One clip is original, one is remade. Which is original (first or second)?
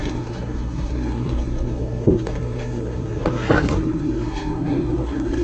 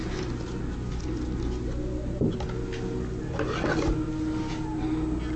second